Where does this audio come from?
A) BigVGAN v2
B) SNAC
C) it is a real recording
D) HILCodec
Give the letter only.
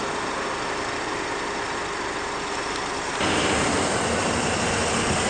C